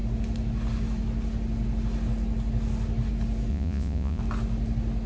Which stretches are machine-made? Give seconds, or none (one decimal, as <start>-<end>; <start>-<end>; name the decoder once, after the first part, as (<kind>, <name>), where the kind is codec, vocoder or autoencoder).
3.5-4.2 (vocoder, Vocos)